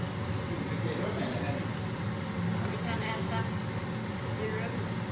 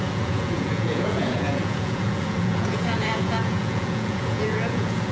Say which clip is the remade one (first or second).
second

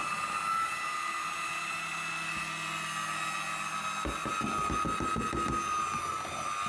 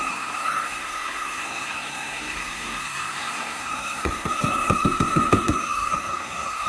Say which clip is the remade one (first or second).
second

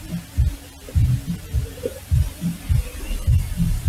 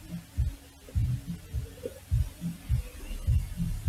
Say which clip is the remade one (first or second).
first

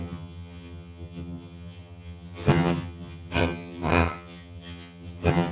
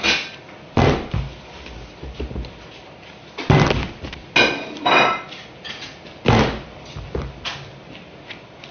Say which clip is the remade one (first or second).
first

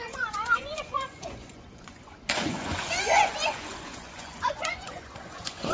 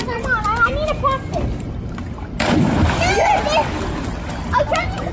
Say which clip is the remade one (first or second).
first